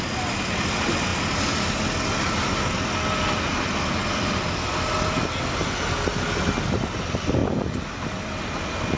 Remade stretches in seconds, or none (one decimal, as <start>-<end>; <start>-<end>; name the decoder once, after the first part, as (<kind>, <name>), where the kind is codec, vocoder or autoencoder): none